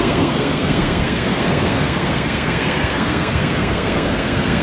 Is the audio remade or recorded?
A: remade